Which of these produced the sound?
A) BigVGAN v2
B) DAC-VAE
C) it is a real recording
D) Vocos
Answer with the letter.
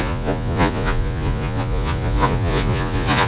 D